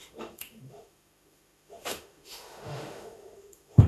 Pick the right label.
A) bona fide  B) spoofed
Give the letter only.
B